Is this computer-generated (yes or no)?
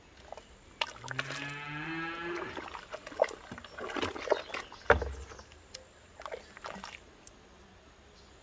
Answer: no